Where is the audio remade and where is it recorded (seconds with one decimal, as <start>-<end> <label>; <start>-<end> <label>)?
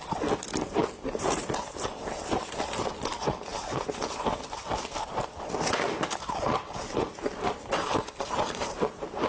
0.0-9.3 remade